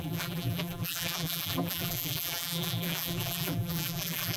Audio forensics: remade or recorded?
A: remade